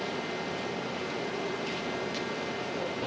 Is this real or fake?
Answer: real